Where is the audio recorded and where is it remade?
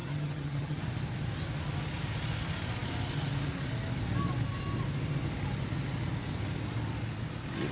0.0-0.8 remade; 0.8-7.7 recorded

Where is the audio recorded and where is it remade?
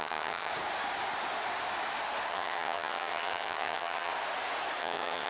0.0-0.5 remade; 0.5-2.3 recorded; 2.3-4.1 remade; 4.1-4.8 recorded; 4.8-5.3 remade